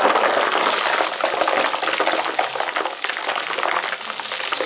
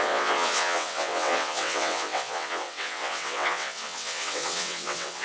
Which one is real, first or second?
first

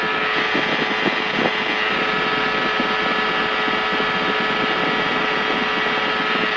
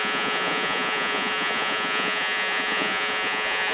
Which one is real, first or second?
first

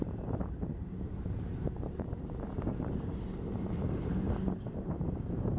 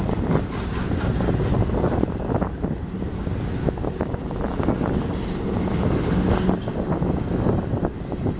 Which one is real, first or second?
second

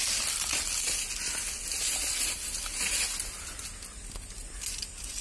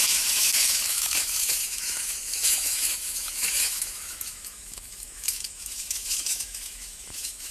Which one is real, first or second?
first